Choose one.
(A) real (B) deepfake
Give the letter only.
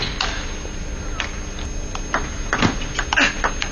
A